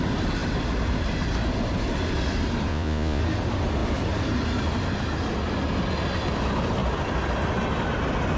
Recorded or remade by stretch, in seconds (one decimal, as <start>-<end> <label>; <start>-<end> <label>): 0.0-2.7 recorded; 2.7-3.2 remade; 3.2-8.4 recorded